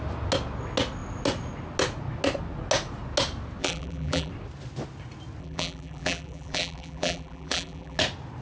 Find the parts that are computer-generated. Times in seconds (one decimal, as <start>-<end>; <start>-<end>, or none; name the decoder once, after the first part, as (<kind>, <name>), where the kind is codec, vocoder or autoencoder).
3.6-4.3 (vocoder, BigVGAN v2); 5.4-8.0

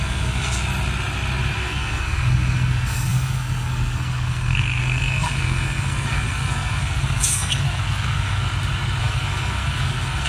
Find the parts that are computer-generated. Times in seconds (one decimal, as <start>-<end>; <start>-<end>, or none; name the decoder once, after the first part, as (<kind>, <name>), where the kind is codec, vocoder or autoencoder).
0.0-0.6 (codec, SNAC); 1.6-8.5; 9.0-10.3

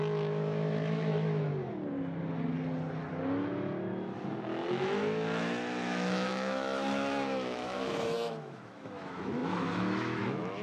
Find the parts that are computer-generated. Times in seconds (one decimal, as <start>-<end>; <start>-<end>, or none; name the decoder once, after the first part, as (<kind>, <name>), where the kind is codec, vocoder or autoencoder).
0.0-1.5 (autoencoder, DAC-VAE); 4.7-10.6

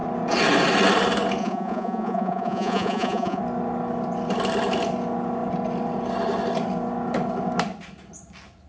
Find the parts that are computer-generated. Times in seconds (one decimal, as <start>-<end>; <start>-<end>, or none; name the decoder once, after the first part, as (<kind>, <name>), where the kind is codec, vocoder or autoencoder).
1.4-3.4 (vocoder, Vocos)

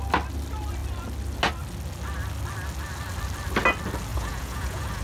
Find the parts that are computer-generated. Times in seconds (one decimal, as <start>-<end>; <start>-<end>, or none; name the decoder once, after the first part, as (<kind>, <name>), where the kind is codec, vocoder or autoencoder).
4.1-5.0 (vocoder, Vocos)

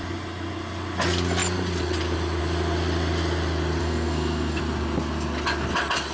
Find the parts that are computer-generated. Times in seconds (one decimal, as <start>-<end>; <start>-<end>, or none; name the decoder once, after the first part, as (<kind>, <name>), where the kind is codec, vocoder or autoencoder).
3.8-4.6 (codec, SNAC)

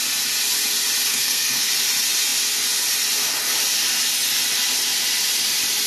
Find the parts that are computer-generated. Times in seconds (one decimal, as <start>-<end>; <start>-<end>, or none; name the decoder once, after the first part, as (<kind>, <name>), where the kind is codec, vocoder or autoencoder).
1.1-1.7 (codec, SNAC)

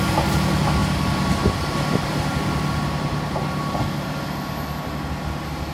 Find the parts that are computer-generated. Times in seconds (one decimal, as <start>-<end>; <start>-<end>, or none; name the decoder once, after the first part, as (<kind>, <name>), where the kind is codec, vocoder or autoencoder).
none